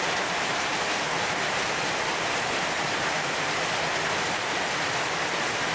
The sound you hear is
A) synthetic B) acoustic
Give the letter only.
A